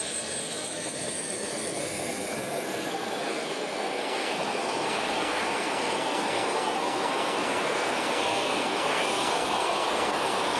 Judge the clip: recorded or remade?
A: remade